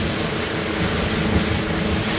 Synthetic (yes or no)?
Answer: no